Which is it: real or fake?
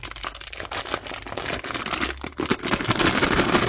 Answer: real